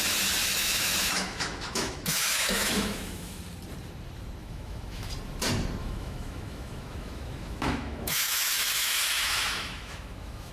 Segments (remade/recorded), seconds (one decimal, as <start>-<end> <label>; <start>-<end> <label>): 0.0-0.4 recorded; 0.4-3.4 remade; 3.4-4.4 recorded; 4.4-5.1 remade; 5.1-5.8 recorded; 5.8-10.5 remade